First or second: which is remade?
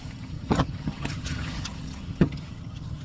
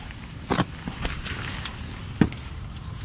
first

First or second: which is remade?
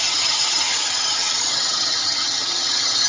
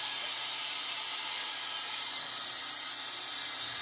first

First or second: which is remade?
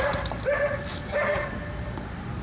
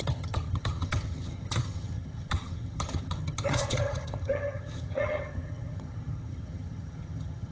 second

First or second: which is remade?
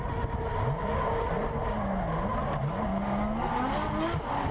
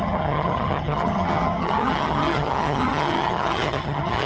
second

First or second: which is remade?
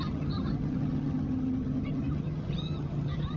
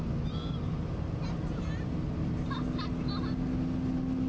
first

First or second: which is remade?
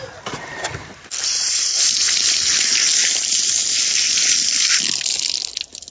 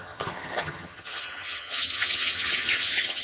second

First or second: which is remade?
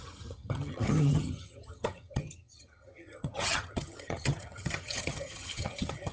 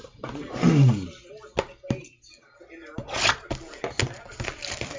first